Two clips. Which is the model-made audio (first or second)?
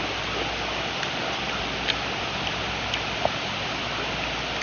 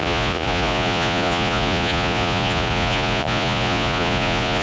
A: second